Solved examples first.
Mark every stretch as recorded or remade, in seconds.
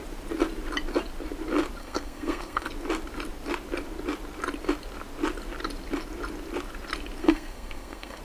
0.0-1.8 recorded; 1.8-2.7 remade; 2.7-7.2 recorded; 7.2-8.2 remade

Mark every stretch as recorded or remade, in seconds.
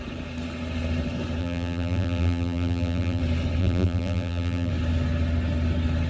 0.0-1.4 recorded; 1.4-3.2 remade; 3.2-3.6 recorded; 3.6-4.7 remade; 4.7-6.1 recorded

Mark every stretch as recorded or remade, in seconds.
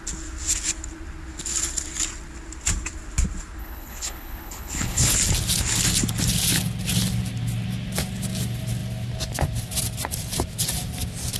0.0-3.6 recorded; 3.6-5.1 remade; 5.1-11.4 recorded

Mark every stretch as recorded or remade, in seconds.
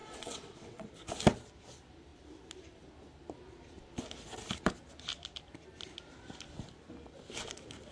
0.0-0.9 remade; 0.9-7.9 recorded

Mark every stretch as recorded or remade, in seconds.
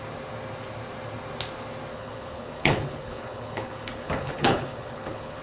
0.0-1.9 recorded; 1.9-5.4 remade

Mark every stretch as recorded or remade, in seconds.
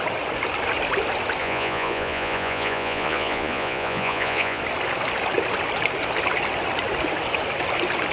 0.0-1.4 recorded; 1.4-4.6 remade; 4.6-8.1 recorded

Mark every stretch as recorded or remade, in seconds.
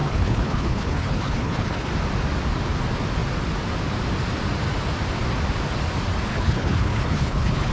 0.0-1.9 remade; 1.9-6.3 recorded; 6.3-7.7 remade